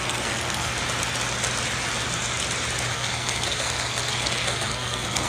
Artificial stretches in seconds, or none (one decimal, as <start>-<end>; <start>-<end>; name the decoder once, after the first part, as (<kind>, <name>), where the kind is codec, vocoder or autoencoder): 0.0-0.7 (codec, SNAC); 2.9-5.3